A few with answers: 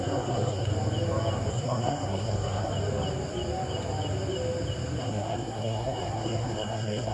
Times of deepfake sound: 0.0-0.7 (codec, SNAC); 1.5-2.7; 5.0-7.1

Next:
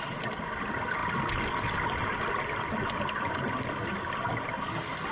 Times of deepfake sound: none